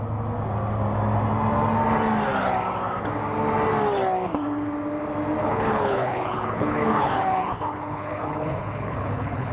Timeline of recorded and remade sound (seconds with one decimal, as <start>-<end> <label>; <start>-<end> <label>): 0.0-5.4 recorded; 5.4-9.5 remade